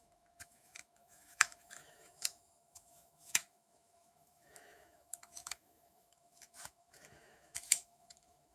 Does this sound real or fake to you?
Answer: fake